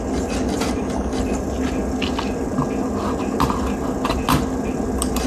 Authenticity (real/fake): real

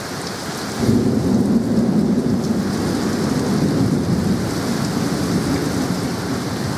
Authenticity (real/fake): real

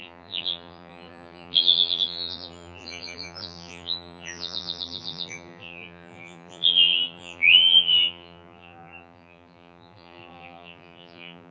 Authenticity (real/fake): fake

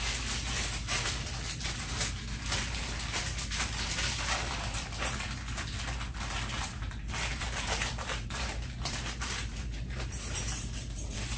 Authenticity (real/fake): fake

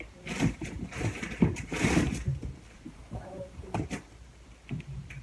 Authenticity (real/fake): fake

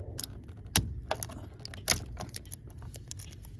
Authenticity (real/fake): real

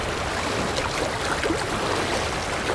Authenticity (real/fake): real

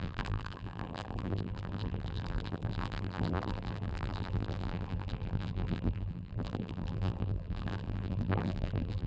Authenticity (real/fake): fake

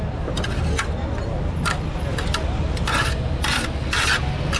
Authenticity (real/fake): real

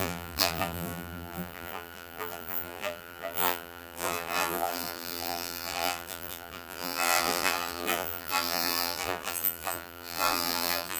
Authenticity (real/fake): fake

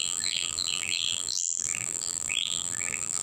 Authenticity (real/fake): fake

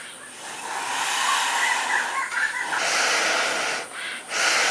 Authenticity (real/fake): real